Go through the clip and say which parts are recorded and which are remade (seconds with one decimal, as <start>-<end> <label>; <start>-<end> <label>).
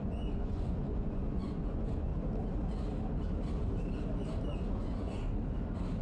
0.0-2.1 remade; 2.1-4.7 recorded; 4.7-5.2 remade; 5.2-6.0 recorded